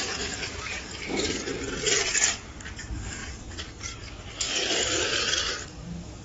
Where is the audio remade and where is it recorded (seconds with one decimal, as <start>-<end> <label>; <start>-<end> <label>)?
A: 0.0-1.5 remade; 1.5-2.1 recorded; 2.1-6.2 remade